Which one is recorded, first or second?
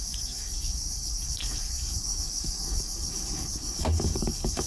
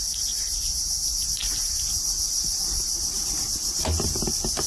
second